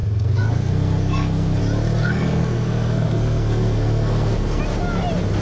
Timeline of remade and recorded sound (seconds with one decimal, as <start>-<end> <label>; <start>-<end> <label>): 0.0-1.6 remade; 1.6-2.0 recorded; 2.0-4.6 remade; 4.6-5.4 recorded

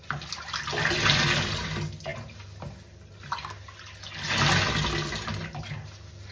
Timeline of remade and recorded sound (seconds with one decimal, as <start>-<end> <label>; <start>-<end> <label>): 0.0-6.3 recorded

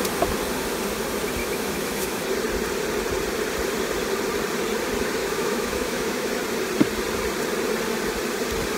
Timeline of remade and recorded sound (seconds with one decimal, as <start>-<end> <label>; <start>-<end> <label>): 0.0-1.4 recorded; 1.4-2.2 remade; 2.2-5.2 recorded; 5.2-6.3 remade; 6.3-8.8 recorded

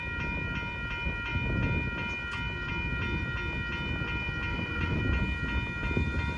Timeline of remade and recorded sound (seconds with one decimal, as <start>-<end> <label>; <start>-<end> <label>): 0.0-4.5 recorded; 4.5-5.0 remade; 5.0-6.4 recorded

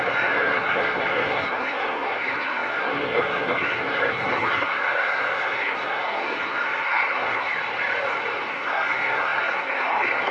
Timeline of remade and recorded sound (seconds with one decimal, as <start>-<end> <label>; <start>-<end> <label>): 0.0-7.5 remade; 7.5-8.5 recorded; 8.5-10.3 remade

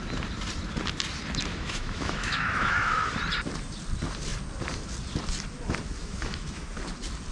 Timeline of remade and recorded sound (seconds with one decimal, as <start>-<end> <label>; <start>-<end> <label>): 0.0-1.5 recorded; 1.5-3.1 remade; 3.1-6.0 recorded; 6.0-6.7 remade; 6.7-7.3 recorded

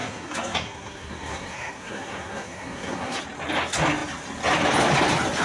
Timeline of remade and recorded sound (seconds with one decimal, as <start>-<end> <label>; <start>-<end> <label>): 0.0-3.2 remade; 3.2-5.4 recorded